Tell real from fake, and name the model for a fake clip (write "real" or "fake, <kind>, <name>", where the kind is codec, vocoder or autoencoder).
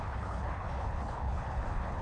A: fake, codec, HILCodec